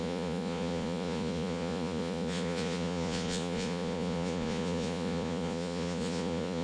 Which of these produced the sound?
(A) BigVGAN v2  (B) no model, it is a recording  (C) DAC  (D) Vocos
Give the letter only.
D